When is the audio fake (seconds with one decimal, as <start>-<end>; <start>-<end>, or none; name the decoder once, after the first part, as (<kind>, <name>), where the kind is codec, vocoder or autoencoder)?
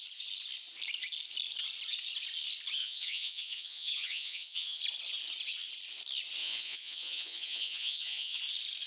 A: 2.8-4.8 (vocoder, Vocos); 6.4-8.4